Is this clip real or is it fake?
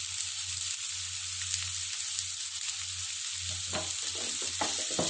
real